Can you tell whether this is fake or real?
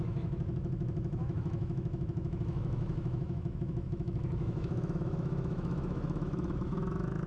fake